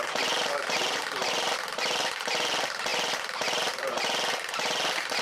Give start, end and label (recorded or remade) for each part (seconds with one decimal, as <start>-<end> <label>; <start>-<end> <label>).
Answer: 0.0-5.2 recorded

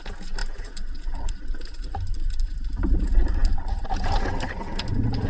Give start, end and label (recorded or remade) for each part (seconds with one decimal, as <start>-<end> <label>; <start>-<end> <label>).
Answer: 0.0-5.3 recorded